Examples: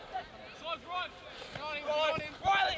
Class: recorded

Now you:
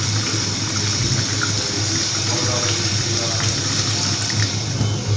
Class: recorded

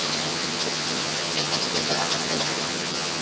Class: remade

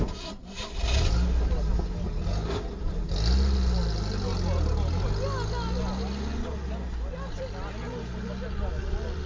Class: recorded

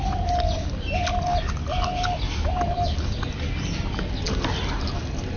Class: recorded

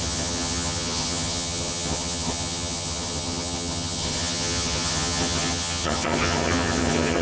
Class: remade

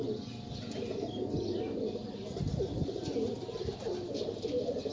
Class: recorded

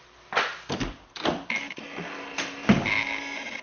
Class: recorded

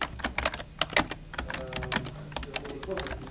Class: recorded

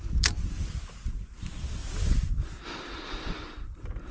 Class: recorded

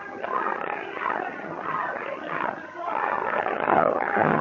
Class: remade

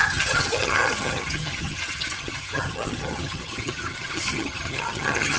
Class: remade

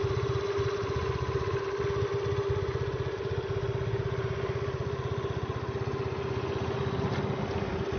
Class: recorded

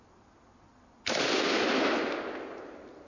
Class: recorded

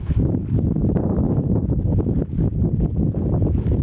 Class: recorded